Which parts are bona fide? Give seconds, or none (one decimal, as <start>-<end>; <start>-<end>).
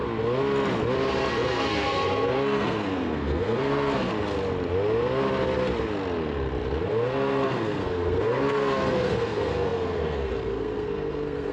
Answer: 0.0-1.3; 4.1-6.8